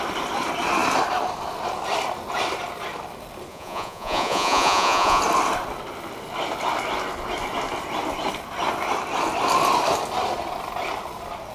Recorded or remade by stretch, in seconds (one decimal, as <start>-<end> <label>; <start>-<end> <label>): 0.0-3.5 recorded; 3.5-5.2 remade; 5.2-11.5 recorded